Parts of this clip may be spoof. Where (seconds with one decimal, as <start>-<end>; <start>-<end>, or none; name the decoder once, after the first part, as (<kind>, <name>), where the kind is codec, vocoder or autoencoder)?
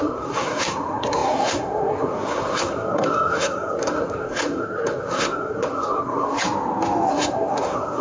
0.0-6.4 (codec, SNAC); 7.1-8.0